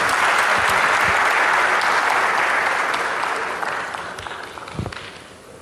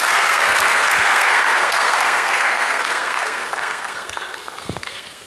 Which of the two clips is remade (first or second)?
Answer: second